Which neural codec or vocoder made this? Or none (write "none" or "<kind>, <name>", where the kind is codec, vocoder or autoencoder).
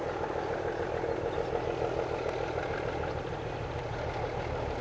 none